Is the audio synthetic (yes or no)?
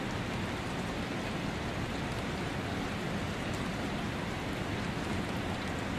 no